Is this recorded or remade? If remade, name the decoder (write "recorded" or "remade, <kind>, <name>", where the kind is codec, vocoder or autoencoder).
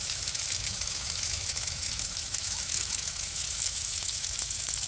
remade, autoencoder, DAC-VAE